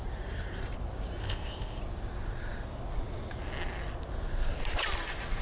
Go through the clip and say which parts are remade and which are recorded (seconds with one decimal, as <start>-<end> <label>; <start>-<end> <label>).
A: 0.0-1.2 recorded; 1.2-1.8 remade; 1.8-5.4 recorded